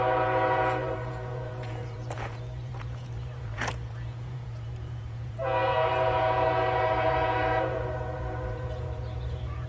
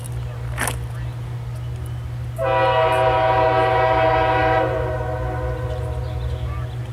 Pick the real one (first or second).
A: second